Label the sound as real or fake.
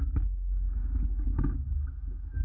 fake